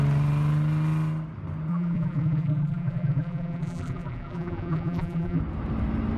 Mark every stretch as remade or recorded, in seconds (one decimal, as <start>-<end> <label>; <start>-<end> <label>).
0.0-1.7 recorded; 1.7-5.4 remade; 5.4-6.2 recorded